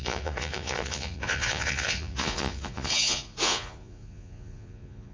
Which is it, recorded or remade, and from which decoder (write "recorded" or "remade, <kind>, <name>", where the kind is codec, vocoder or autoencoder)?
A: remade, vocoder, Vocos